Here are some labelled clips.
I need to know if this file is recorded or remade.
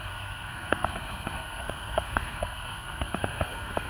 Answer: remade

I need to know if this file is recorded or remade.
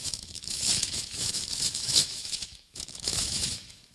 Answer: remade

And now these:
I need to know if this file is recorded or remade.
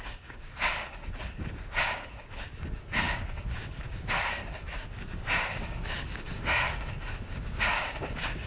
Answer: remade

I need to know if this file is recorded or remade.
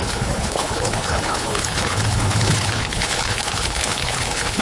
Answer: remade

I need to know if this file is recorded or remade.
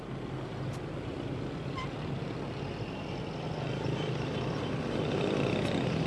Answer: recorded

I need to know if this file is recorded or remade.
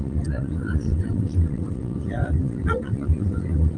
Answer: remade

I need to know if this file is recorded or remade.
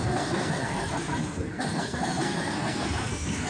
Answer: remade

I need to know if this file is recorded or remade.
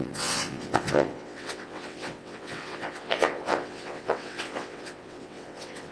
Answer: remade